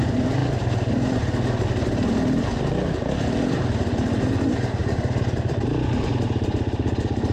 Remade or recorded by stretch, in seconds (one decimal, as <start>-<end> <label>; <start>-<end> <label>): 0.0-4.8 recorded; 4.8-6.1 remade; 6.1-7.3 recorded